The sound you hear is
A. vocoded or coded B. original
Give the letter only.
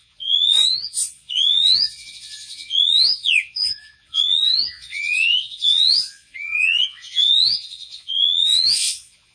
A